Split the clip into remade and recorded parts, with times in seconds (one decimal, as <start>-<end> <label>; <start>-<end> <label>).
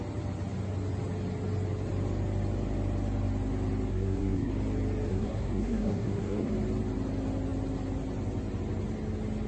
0.0-3.9 recorded; 3.9-4.5 remade; 4.5-5.1 recorded; 5.1-6.5 remade; 6.5-9.5 recorded